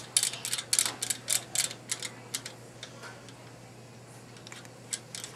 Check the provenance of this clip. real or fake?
real